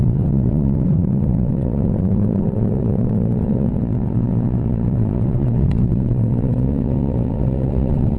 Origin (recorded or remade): remade